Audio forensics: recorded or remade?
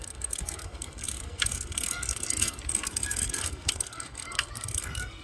remade